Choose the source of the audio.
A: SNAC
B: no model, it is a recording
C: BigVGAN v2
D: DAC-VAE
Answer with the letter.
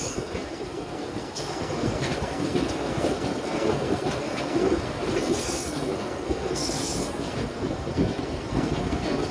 A